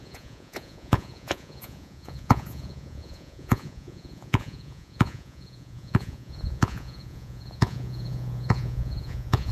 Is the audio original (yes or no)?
no